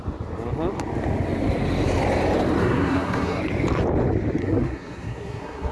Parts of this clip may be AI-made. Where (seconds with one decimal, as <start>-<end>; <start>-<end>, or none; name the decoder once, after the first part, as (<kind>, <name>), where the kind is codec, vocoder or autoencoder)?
2.6-3.4 (codec, SNAC); 4.4-5.7